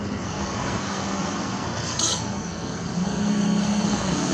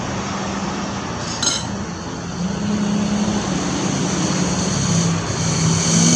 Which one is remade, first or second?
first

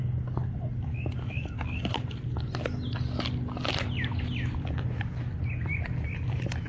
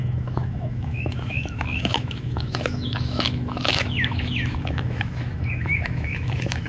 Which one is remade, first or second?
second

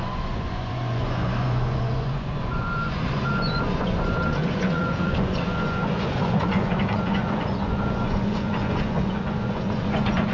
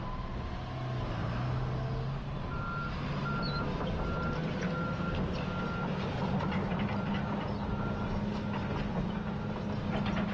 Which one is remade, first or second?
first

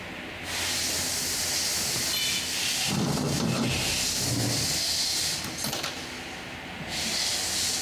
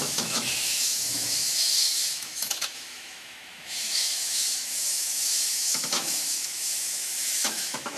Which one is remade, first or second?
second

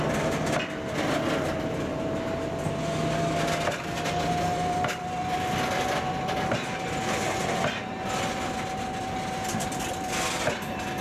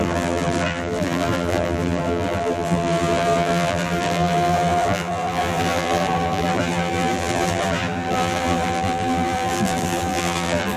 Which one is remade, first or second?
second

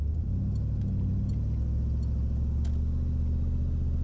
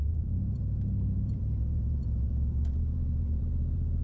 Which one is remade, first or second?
second